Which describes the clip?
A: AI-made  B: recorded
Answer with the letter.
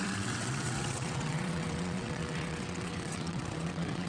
A